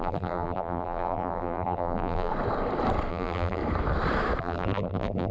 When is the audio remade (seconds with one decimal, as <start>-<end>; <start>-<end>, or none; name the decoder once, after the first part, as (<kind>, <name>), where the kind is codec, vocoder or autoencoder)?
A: 0.0-2.3 (vocoder, BigVGAN v2); 3.1-3.6; 4.4-5.3